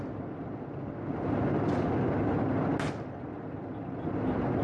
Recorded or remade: recorded